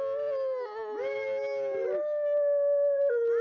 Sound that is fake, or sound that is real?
real